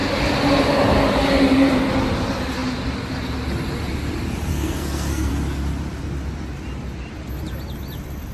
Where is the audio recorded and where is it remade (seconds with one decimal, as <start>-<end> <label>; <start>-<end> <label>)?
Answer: 0.0-4.5 recorded; 4.5-5.3 remade; 5.3-8.3 recorded